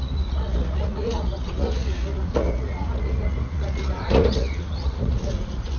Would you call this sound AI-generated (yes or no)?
yes